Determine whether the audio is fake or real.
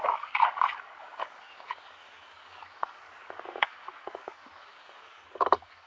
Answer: fake